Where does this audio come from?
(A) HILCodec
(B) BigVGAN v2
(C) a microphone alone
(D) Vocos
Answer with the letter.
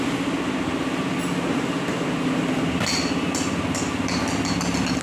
C